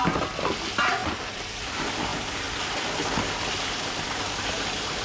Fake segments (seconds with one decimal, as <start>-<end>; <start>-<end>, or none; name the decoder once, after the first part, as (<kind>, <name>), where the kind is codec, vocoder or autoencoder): none